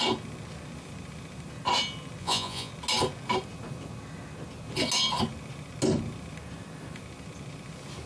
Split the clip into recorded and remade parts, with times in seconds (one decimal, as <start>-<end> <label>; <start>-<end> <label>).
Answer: 0.0-2.2 recorded; 2.2-2.7 remade; 2.7-8.1 recorded